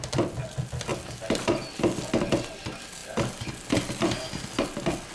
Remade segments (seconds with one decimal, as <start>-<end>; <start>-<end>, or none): none